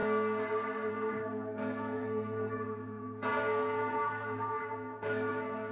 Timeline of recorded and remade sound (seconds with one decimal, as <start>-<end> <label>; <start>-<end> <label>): 0.0-0.9 recorded; 0.9-5.7 remade